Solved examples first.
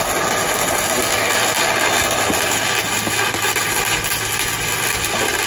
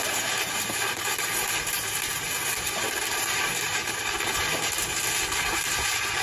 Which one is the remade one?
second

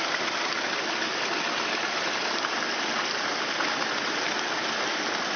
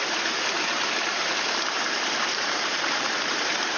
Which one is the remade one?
second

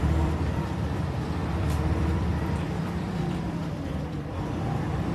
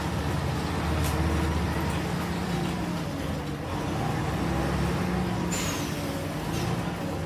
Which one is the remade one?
first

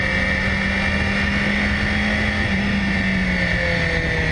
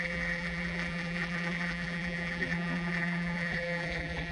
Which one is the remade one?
second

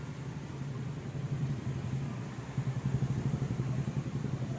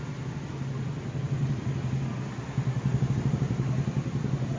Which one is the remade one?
first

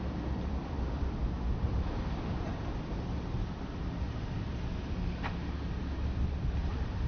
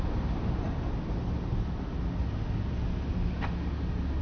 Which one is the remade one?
first